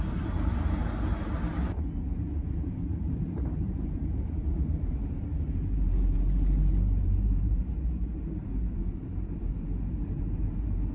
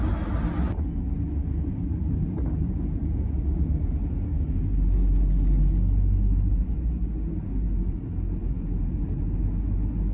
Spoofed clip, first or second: first